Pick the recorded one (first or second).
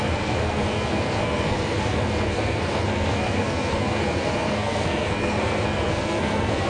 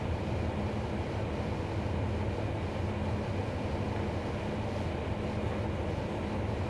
second